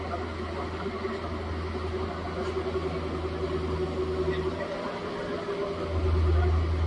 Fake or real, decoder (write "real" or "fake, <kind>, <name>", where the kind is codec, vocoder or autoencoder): real